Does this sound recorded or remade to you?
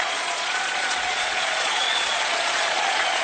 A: remade